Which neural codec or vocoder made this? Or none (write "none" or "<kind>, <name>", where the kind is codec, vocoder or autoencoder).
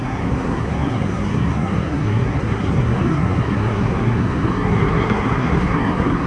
codec, SNAC